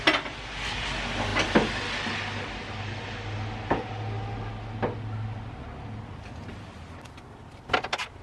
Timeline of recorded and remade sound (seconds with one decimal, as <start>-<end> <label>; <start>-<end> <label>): 0.0-8.2 recorded